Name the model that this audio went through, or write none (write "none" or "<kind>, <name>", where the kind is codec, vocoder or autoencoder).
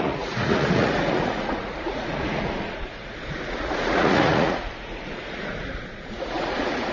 vocoder, Vocos